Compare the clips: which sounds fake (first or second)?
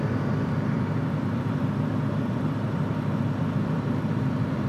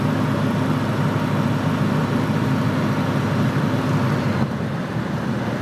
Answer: first